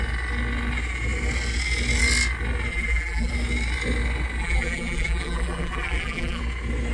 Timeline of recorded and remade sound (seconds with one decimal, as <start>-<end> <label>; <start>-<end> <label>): 0.0-2.7 recorded; 2.7-3.3 remade; 3.3-4.4 recorded; 4.4-6.4 remade; 6.4-6.9 recorded